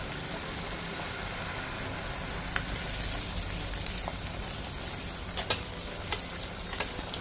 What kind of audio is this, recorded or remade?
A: recorded